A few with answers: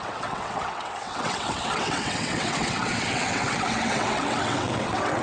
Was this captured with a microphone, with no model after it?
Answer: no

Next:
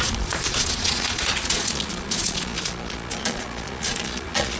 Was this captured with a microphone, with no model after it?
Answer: no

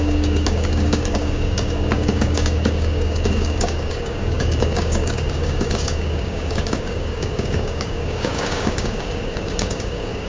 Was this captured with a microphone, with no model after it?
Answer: no